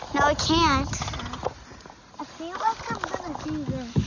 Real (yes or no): yes